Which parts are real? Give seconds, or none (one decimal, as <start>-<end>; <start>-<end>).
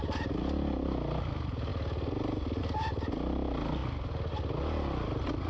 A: 0.0-5.5